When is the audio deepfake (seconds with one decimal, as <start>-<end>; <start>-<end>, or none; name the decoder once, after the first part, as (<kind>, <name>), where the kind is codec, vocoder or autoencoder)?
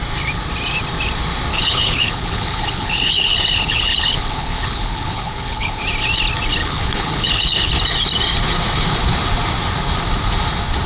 1.5-5.8 (codec, HILCodec); 6.6-7.7